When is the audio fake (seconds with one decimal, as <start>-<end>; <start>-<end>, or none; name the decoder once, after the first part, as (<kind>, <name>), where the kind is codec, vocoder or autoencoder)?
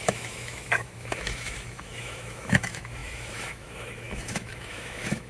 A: 0.0-5.3 (autoencoder, DAC-VAE)